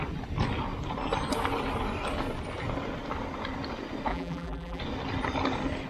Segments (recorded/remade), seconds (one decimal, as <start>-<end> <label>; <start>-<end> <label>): 0.0-4.1 recorded; 4.1-4.8 remade; 4.8-5.9 recorded